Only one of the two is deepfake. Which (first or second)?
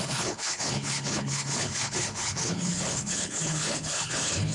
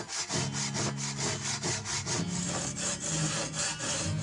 first